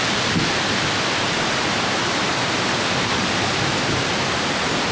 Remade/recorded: recorded